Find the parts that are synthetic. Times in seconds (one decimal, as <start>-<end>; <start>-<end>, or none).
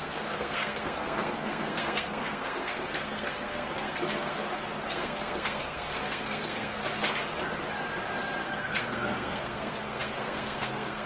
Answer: 0.0-6.8; 8.4-11.1